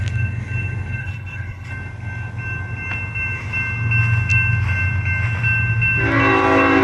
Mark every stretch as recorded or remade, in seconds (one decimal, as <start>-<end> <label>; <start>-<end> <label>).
0.0-1.0 recorded; 1.0-1.7 remade; 1.7-6.8 recorded